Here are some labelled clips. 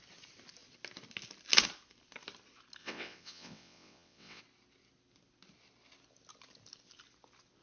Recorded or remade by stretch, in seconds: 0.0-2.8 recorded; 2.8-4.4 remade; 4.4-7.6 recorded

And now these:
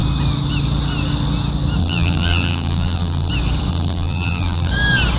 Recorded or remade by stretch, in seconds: 0.0-1.8 recorded; 1.8-3.3 remade; 3.3-3.7 recorded; 3.7-4.7 remade; 4.7-5.2 recorded

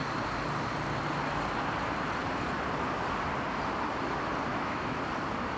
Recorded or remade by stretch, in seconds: 0.0-4.5 recorded; 4.5-5.0 remade; 5.0-5.6 recorded

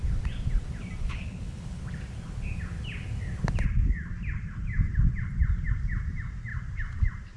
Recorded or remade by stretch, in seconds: 0.0-1.0 recorded; 1.0-1.8 remade; 1.8-7.4 recorded

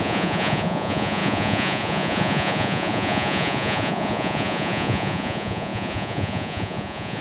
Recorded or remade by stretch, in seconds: 0.0-7.2 remade

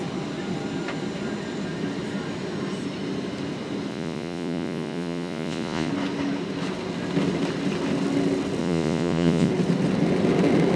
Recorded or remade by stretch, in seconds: 0.0-3.9 recorded; 3.9-5.9 remade; 5.9-8.6 recorded; 8.6-9.5 remade; 9.5-10.8 recorded